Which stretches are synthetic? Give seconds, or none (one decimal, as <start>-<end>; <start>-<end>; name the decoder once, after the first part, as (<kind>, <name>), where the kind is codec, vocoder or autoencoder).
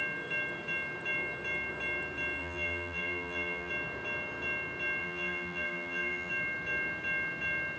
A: 2.4-3.7 (vocoder, BigVGAN v2); 5.0-6.3